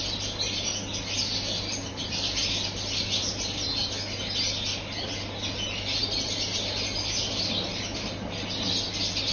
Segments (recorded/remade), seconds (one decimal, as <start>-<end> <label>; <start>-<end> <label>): 0.0-9.3 recorded